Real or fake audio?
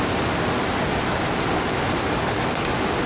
real